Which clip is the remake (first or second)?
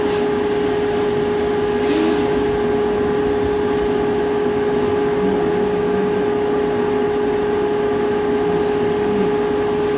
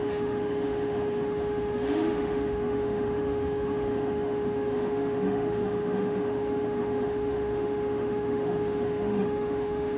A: second